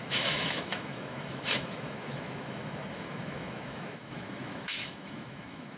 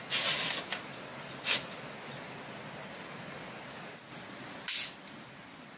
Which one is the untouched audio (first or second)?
second